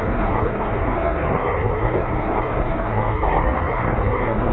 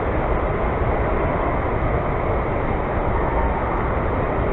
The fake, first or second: first